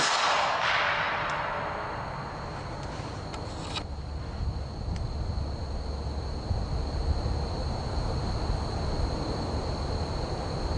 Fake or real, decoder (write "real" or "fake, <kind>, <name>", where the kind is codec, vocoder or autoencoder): real